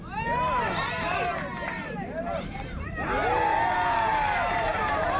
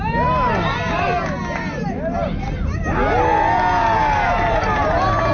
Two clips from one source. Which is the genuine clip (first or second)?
second